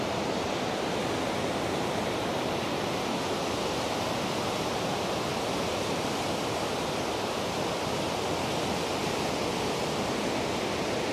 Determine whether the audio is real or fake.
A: real